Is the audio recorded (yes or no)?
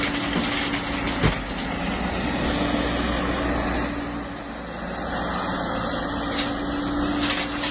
yes